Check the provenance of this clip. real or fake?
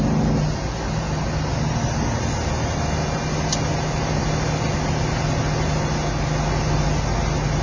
real